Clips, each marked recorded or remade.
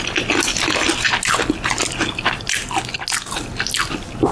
recorded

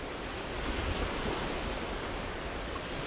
recorded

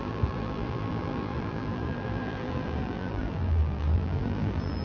remade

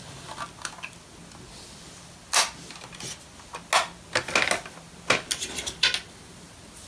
recorded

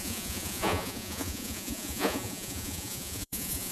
remade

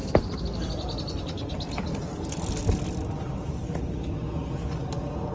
recorded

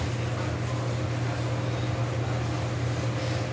recorded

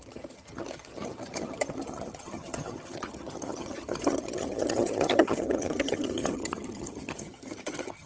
remade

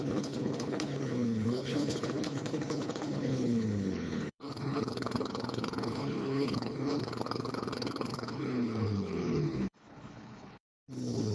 remade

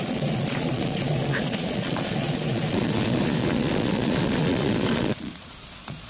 remade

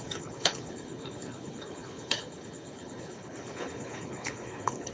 remade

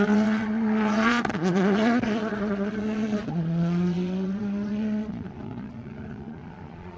remade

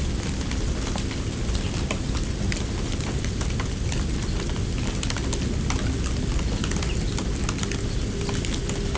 recorded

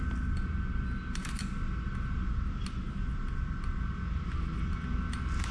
recorded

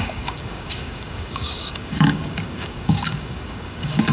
remade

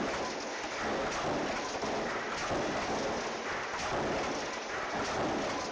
recorded